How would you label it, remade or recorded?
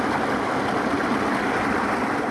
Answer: recorded